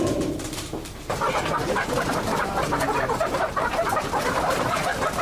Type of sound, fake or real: fake